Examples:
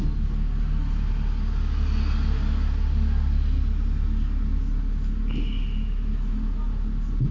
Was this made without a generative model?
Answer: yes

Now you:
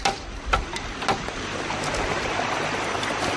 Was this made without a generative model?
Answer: yes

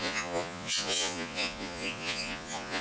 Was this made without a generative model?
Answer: no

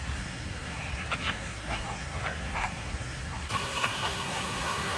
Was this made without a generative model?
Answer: no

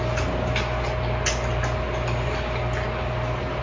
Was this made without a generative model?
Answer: yes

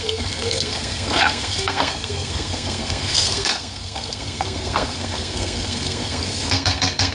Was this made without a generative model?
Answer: no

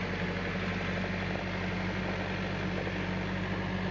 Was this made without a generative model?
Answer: yes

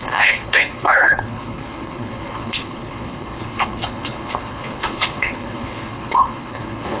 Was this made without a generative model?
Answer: no